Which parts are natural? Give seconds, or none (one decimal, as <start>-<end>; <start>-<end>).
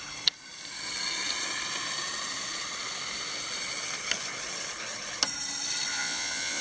0.0-5.9